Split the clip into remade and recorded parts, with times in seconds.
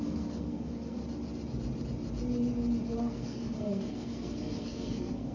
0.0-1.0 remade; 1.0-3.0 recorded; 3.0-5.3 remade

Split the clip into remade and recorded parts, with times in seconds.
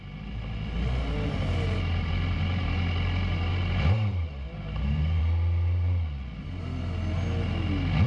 0.0-3.5 recorded; 3.5-5.2 remade; 5.2-8.1 recorded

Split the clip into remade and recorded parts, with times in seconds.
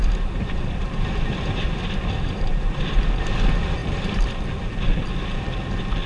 0.0-3.3 remade; 3.3-3.8 recorded; 3.8-4.4 remade; 4.4-6.1 recorded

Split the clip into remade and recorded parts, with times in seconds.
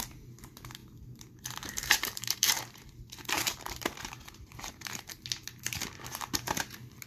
0.0-0.8 recorded; 0.8-5.1 remade; 5.1-7.1 recorded